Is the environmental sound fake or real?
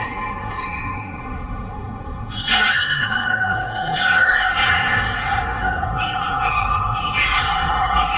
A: fake